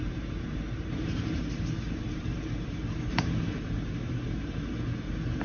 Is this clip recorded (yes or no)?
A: no